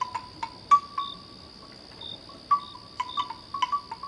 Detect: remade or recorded recorded